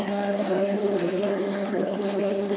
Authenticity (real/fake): fake